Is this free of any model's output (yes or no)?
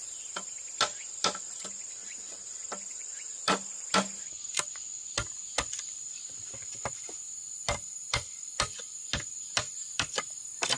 yes